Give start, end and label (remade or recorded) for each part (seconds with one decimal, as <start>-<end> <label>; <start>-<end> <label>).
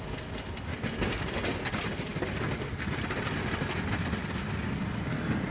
0.0-5.5 recorded